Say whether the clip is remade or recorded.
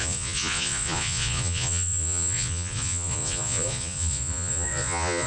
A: remade